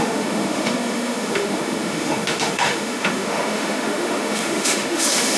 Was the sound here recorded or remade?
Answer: remade